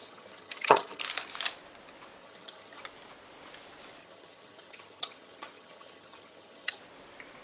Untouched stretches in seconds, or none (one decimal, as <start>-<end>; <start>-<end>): 1.0-2.2; 2.8-4.0; 6.8-7.4